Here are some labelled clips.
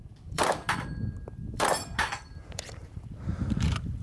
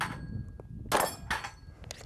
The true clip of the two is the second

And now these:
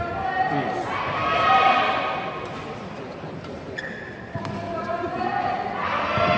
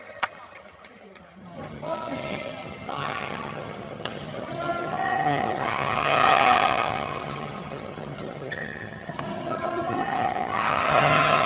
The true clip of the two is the first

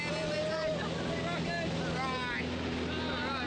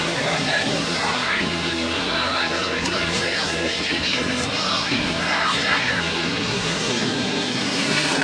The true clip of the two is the first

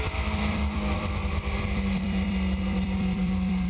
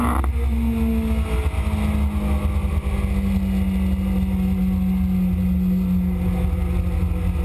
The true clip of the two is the second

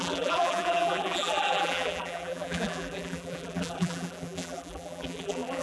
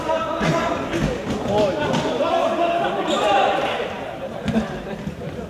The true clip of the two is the second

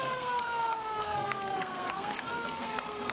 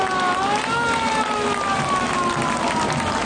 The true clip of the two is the second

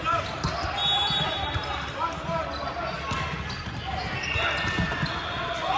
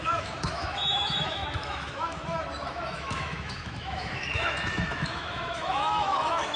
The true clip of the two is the first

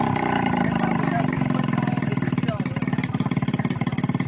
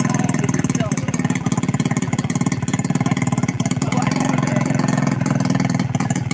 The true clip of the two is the first